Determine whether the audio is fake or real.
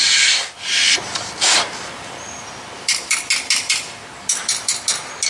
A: real